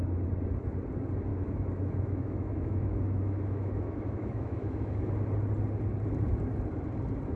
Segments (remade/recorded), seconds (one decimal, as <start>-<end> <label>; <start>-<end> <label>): 0.0-1.3 recorded; 1.3-5.1 remade; 5.1-7.4 recorded